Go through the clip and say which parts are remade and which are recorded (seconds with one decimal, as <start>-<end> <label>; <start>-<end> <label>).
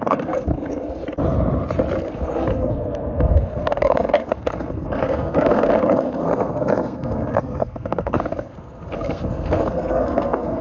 0.0-1.0 remade; 1.0-2.0 recorded; 2.0-10.6 remade